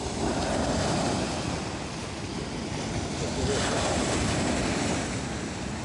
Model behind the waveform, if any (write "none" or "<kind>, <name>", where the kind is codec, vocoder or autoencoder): none